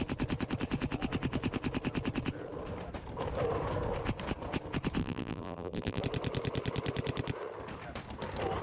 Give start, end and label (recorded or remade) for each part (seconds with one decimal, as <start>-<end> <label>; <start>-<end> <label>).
0.0-5.0 recorded; 5.0-6.0 remade; 6.0-8.6 recorded